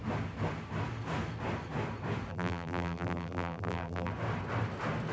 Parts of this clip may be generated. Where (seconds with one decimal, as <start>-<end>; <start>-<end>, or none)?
2.3-4.1